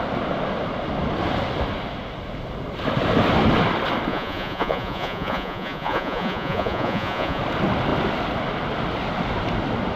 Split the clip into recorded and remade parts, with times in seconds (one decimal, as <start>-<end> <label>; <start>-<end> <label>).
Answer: 0.0-4.1 recorded; 4.1-7.4 remade; 7.4-10.0 recorded